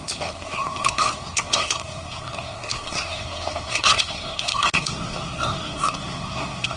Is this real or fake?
fake